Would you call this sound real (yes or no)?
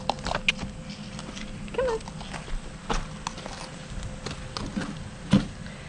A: yes